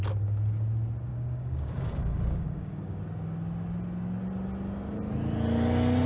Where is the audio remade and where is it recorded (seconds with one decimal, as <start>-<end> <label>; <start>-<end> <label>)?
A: 0.0-1.1 recorded; 1.1-3.0 remade; 3.0-6.1 recorded